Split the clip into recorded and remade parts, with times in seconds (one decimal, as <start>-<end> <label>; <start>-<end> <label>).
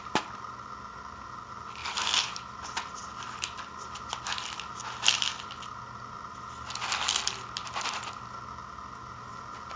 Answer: 0.0-1.8 recorded; 1.8-3.2 remade; 3.2-9.8 recorded